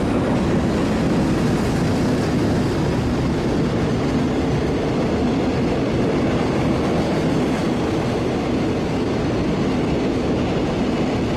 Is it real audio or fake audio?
real